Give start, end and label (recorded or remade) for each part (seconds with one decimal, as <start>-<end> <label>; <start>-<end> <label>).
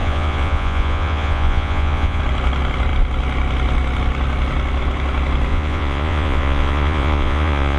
0.0-2.2 remade; 2.2-5.5 recorded; 5.5-7.8 remade